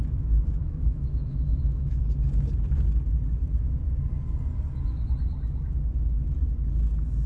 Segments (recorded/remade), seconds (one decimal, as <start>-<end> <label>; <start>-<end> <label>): 0.0-0.6 recorded; 0.6-2.0 remade; 2.0-7.3 recorded